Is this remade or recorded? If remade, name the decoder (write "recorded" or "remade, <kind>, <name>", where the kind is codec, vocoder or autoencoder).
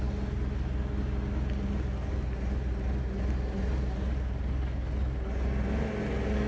recorded